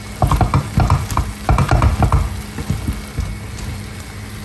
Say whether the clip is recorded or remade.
recorded